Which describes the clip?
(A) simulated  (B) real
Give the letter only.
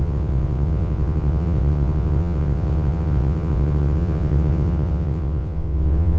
A